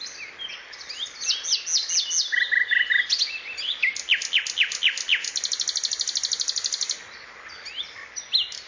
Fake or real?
real